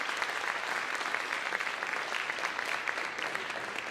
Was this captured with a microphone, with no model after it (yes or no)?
yes